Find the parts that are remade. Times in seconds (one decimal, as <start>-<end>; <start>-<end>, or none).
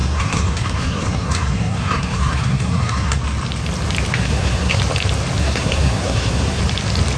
0.0-3.2; 4.1-4.8; 5.4-6.6